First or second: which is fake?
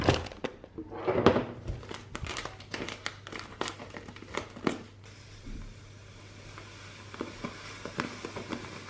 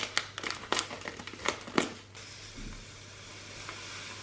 first